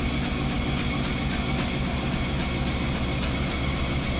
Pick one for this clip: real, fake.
real